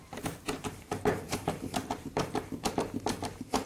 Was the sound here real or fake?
fake